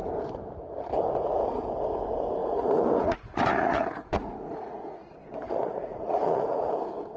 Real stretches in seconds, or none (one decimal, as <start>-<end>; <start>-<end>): 0.0-2.4; 6.7-7.2